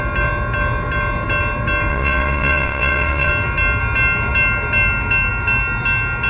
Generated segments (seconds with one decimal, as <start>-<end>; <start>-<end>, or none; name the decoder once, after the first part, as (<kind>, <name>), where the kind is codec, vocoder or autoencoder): 1.9-3.3 (vocoder, WaveNeXt)

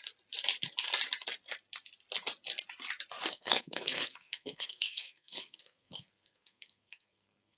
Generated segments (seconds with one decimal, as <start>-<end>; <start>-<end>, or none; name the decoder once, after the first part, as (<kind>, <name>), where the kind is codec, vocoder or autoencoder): 3.3-7.6 (codec, SNAC)

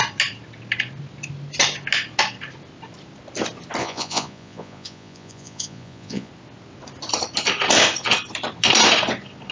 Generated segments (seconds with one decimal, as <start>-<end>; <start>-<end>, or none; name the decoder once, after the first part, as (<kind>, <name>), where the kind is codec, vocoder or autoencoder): 3.8-6.3 (vocoder, Vocos)

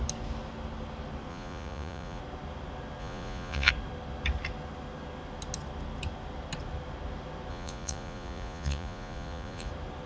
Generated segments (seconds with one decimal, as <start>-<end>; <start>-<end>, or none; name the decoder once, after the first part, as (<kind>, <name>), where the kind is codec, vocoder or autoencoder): 1.3-2.2 (vocoder, Vocos); 3.0-3.7; 7.5-9.7

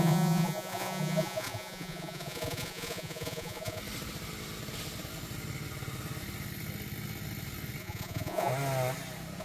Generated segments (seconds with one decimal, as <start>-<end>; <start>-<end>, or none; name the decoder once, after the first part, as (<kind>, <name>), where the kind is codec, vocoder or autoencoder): 0.0-3.8 (vocoder, Vocos); 7.8-8.5

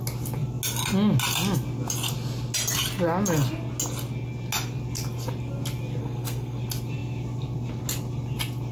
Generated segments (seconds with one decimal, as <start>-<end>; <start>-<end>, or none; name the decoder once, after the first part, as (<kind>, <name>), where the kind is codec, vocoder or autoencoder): 6.0-6.6 (codec, SNAC)